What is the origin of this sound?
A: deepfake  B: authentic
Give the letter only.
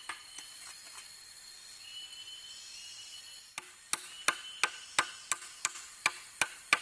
B